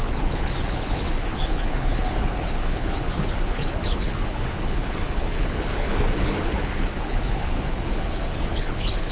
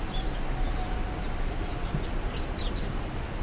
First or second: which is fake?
first